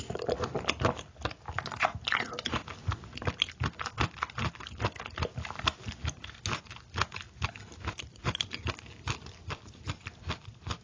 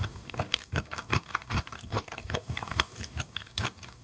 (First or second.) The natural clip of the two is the first